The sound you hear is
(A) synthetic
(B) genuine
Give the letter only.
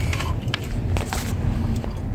B